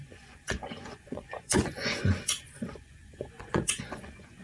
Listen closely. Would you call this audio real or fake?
fake